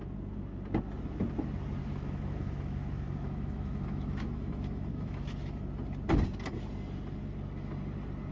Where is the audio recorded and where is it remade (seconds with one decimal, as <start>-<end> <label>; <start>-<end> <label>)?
0.0-1.8 recorded; 1.8-5.6 remade; 5.6-8.3 recorded